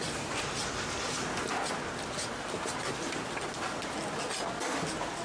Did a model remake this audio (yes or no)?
no